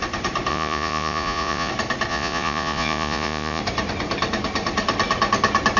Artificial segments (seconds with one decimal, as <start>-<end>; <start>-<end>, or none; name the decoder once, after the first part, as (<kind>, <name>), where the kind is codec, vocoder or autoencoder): 0.5-1.7 (vocoder, Vocos); 2.1-3.6